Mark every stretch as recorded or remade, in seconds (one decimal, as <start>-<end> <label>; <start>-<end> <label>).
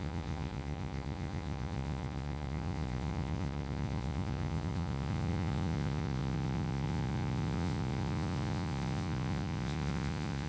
0.0-10.5 remade